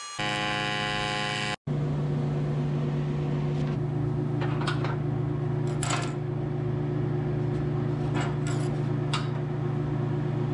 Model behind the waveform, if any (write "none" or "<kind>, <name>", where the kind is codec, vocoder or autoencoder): none